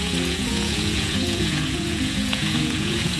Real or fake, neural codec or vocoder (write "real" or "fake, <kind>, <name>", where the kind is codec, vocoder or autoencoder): fake, vocoder, Vocos